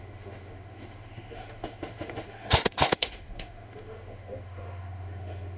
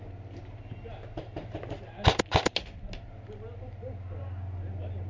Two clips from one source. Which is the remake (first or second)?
first